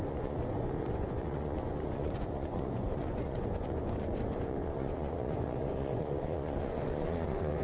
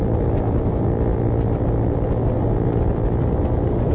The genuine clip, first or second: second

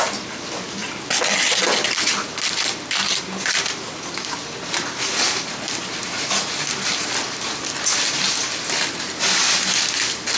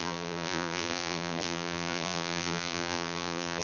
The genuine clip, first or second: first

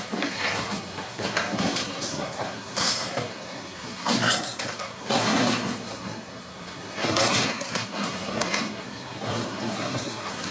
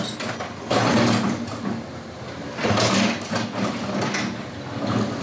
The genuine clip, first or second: second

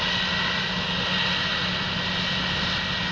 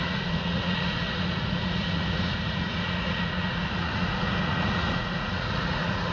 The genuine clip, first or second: first